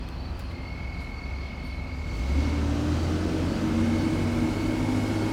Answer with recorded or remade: recorded